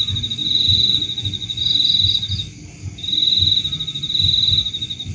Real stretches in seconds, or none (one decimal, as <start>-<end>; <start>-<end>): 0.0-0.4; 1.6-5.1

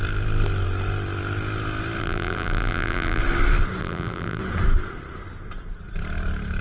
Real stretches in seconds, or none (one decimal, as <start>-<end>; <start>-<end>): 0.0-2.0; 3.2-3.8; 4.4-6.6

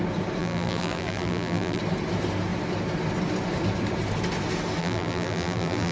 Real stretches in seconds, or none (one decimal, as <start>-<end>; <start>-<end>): 0.0-0.4; 1.8-4.8

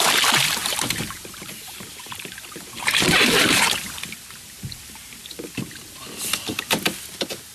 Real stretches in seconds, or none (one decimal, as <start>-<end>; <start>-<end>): 0.0-0.6; 5.1-7.5

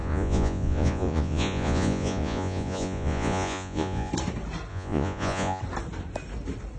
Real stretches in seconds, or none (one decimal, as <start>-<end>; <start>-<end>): 4.1-4.7; 5.6-6.8

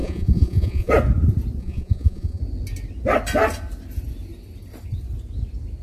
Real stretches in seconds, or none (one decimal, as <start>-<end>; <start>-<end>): 0.9-1.6; 2.4-5.8

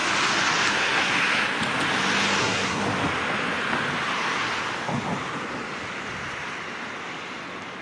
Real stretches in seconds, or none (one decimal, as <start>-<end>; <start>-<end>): 0.0-0.7; 1.1-2.4; 2.8-7.8

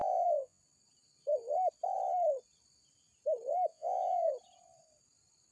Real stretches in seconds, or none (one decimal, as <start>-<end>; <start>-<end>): 0.6-3.7; 4.3-5.5